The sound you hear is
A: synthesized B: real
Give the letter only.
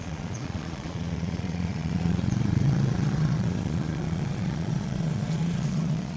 A